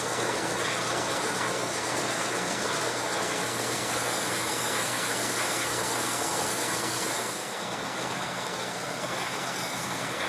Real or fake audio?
fake